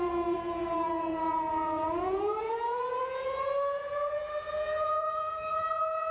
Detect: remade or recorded remade